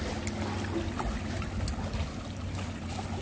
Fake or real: real